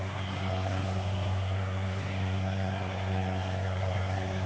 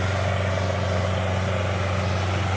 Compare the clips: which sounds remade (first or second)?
first